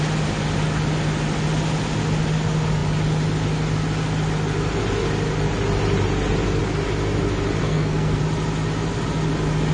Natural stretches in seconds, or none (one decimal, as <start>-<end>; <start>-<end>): 0.0-7.6; 8.2-9.7